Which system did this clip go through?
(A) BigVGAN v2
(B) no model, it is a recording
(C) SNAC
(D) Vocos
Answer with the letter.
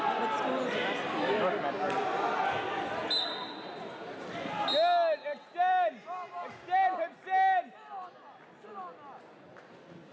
B